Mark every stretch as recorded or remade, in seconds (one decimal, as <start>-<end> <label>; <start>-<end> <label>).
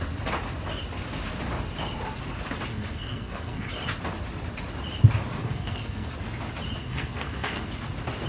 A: 0.0-2.7 recorded; 2.7-3.7 remade; 3.7-5.4 recorded; 5.4-6.1 remade; 6.1-6.8 recorded; 6.8-7.7 remade; 7.7-8.3 recorded